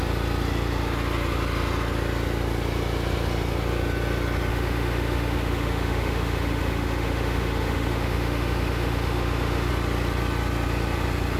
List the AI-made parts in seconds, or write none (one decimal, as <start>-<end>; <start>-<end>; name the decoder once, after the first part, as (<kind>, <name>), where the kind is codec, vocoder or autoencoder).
4.5-9.7 (autoencoder, DAC-VAE)